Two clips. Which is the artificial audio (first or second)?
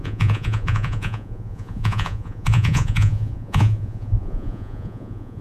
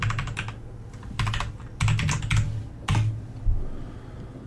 first